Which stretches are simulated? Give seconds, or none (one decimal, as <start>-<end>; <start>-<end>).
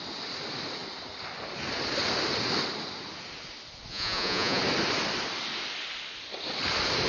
3.9-4.6